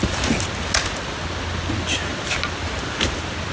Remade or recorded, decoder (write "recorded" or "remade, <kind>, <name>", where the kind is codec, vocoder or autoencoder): recorded